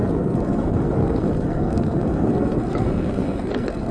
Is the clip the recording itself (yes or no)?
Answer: no